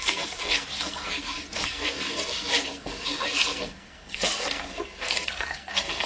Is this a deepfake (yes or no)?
yes